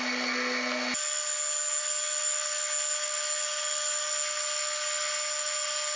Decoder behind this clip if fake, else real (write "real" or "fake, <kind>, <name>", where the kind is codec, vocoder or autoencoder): real